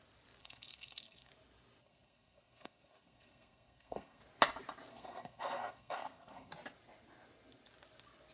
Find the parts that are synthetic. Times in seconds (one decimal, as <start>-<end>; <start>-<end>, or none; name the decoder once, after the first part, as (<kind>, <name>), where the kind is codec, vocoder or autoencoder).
0.4-1.3 (codec, SNAC); 1.8-4.2; 4.9-6.5